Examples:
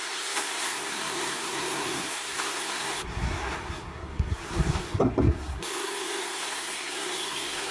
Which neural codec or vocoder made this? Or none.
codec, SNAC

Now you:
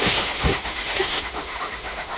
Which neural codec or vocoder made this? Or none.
autoencoder, DAC-VAE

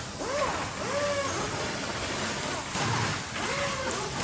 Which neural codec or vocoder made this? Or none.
none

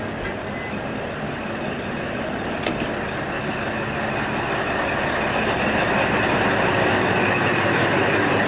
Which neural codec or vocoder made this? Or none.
none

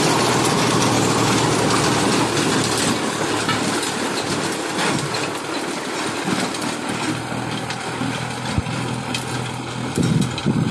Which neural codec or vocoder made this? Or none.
none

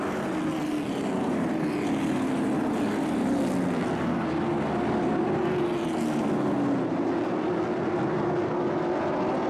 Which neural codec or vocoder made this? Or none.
none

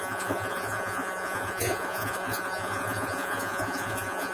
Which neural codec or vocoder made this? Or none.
vocoder, Vocos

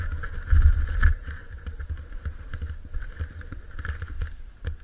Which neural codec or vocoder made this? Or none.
none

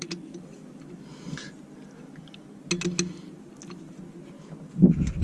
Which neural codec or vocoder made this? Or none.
none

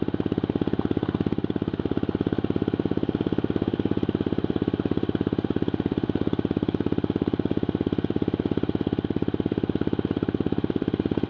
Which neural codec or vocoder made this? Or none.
vocoder, BigVGAN v2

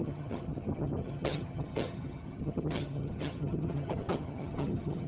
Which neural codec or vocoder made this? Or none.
vocoder, HiFi-GAN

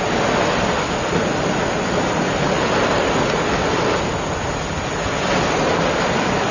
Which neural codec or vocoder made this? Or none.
none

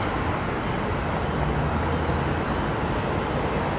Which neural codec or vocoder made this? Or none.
none